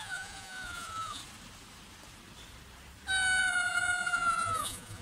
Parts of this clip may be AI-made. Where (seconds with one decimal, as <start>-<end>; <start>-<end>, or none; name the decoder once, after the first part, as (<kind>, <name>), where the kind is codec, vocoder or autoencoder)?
0.0-1.2 (vocoder, Vocos); 3.4-5.0